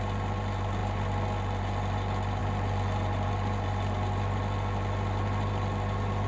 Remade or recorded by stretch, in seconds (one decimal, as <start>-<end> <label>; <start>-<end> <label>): 0.0-6.3 recorded